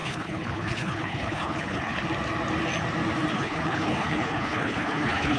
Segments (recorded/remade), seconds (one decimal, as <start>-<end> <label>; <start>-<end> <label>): 0.0-2.0 remade; 2.0-3.3 recorded; 3.3-5.4 remade